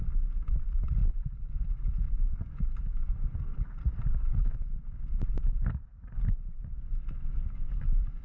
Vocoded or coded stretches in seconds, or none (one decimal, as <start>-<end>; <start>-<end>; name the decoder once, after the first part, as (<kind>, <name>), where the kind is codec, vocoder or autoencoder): none